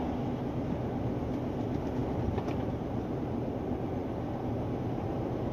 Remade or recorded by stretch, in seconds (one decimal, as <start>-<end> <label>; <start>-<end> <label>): 0.0-5.5 recorded